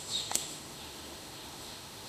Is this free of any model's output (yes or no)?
no